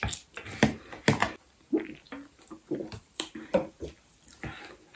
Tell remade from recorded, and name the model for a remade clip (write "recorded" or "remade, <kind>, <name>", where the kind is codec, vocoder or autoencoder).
recorded